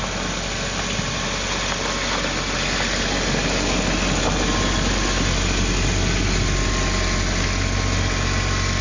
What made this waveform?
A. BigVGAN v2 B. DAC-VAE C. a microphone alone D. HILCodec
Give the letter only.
C